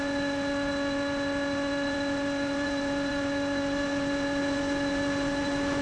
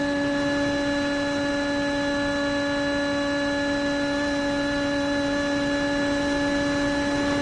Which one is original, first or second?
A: second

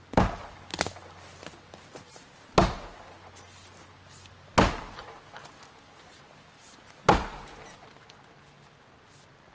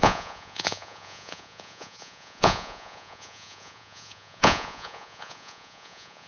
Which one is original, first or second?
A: first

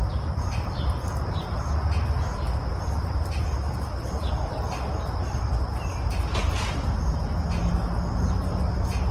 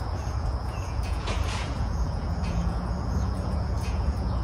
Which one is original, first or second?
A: first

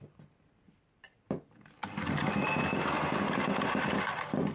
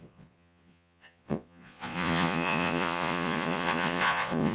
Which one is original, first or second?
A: first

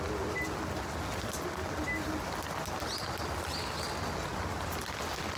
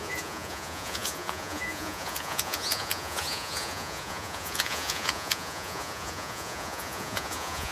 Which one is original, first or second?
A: first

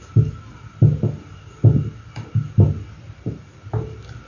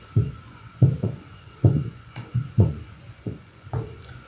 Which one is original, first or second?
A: first